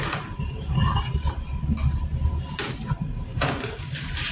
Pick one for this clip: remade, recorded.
remade